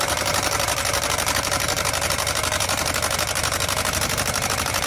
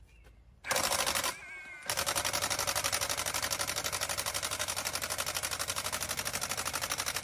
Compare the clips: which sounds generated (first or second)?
first